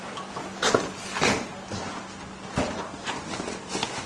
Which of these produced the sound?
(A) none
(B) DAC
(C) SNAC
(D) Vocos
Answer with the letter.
A